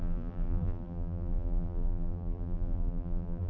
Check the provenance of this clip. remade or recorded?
remade